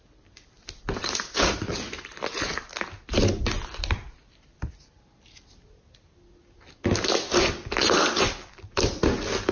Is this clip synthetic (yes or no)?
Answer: no